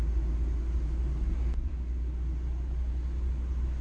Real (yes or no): yes